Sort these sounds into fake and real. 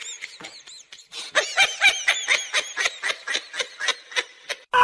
real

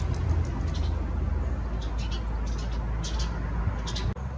real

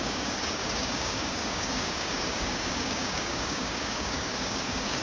fake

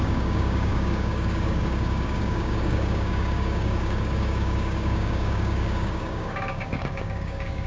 fake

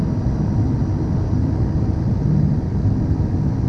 real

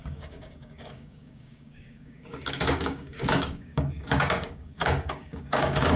fake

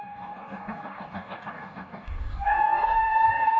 fake